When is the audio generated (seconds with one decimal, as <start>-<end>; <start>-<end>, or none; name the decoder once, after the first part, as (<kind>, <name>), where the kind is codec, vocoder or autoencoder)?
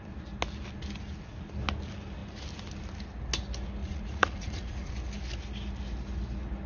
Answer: 3.8-4.9 (vocoder, Vocos)